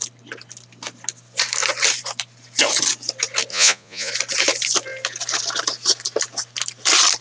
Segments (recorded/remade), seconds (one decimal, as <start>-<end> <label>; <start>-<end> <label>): 0.0-3.5 recorded; 3.5-4.1 remade; 4.1-7.2 recorded